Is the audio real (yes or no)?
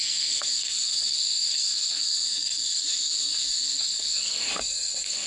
no